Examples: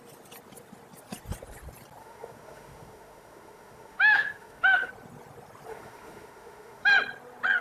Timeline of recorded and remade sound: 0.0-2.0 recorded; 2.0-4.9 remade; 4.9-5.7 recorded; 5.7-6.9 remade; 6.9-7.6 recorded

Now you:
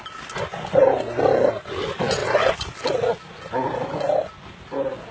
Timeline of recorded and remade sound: 0.0-5.1 recorded

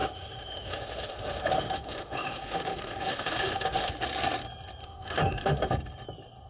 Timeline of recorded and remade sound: 0.0-3.9 remade; 3.9-4.8 recorded; 4.8-5.7 remade; 5.7-6.5 recorded

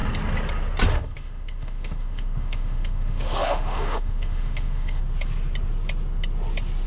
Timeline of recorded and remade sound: 0.0-0.9 recorded; 0.9-5.0 remade; 5.0-6.9 recorded

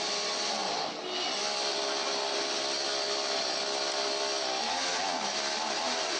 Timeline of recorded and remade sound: 0.0-6.2 recorded